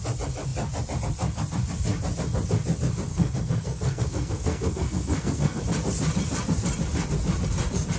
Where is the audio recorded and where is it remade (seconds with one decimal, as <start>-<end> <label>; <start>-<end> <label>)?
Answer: 0.0-3.1 recorded; 3.1-5.6 remade; 5.6-8.0 recorded